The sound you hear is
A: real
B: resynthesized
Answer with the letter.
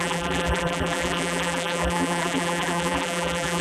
B